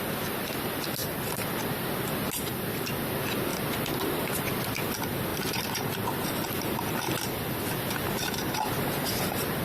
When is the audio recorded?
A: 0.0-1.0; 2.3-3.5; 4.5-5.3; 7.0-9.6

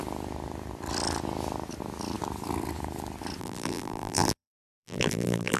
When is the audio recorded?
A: 0.0-3.4

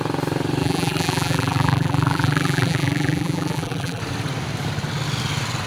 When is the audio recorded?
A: 0.0-0.6; 4.0-5.7